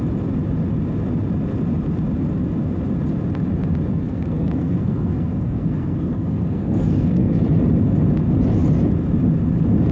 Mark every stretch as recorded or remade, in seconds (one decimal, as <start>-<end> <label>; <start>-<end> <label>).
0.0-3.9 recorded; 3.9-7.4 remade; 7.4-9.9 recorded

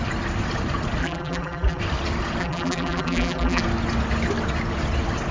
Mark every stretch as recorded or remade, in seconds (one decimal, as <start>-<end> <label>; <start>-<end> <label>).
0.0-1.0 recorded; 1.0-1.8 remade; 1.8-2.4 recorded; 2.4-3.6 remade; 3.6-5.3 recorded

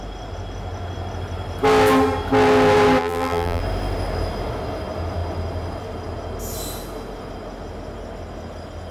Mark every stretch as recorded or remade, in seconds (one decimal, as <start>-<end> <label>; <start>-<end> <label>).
0.0-3.0 recorded; 3.0-3.6 remade; 3.6-8.9 recorded

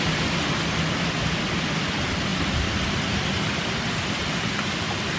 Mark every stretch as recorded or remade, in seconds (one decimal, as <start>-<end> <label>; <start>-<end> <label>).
0.0-5.2 recorded